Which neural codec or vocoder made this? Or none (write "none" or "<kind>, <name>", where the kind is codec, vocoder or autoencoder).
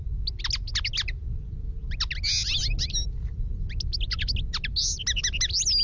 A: none